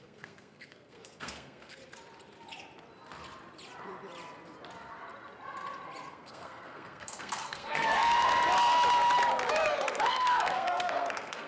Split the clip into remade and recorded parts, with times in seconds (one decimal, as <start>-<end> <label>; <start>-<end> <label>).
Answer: 0.0-1.8 remade; 1.8-6.1 recorded; 6.1-8.3 remade; 8.3-10.0 recorded; 10.0-11.5 remade